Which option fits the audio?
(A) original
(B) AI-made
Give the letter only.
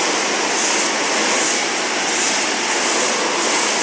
A